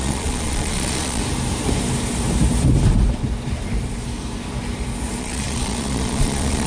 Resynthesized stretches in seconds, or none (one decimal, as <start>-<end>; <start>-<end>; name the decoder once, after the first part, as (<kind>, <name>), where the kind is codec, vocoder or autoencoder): 0.0-1.2 (vocoder, Vocos); 5.2-6.7